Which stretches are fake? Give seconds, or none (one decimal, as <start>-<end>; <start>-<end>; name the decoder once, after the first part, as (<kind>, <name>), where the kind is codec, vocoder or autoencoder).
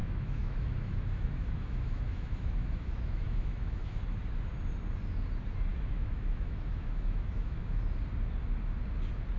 0.0-4.0 (autoencoder, DAC-VAE); 5.7-7.8